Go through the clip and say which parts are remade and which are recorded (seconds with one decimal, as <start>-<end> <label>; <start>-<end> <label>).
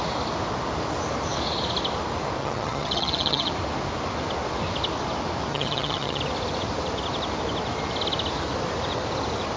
0.0-2.4 recorded; 2.4-3.5 remade; 3.5-5.5 recorded; 5.5-6.2 remade; 6.2-9.6 recorded